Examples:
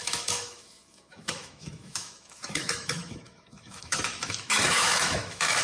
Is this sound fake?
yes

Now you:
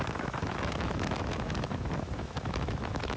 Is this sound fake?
yes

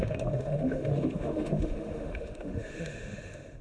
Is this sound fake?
yes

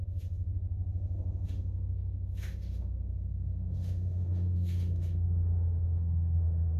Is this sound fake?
yes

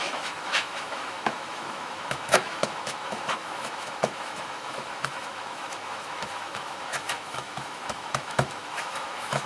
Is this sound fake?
yes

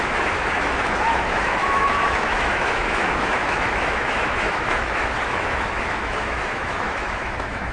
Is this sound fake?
yes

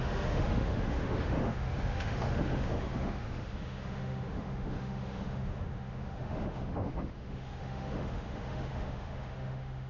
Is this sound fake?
yes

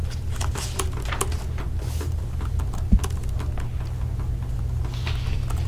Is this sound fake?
no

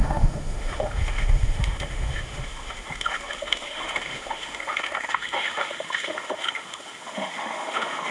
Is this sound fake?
yes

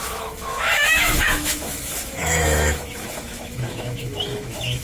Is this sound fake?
yes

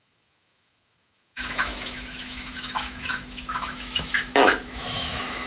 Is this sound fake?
yes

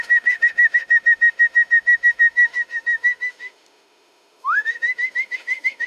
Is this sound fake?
yes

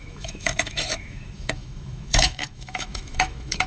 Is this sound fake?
yes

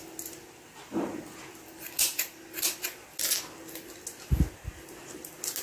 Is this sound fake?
no